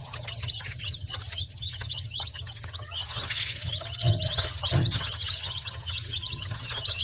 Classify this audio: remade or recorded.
remade